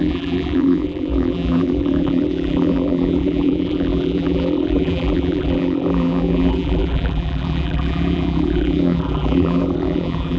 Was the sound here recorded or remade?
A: remade